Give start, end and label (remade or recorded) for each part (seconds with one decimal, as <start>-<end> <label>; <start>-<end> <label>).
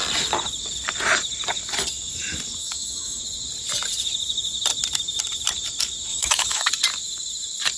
0.0-2.6 recorded; 2.6-3.2 remade; 3.2-6.1 recorded; 6.1-6.7 remade; 6.7-7.8 recorded